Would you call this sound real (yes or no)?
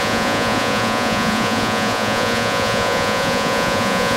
no